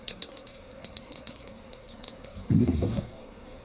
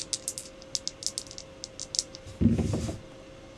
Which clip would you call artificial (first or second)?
first